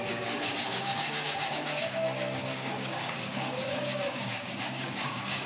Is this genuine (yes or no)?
no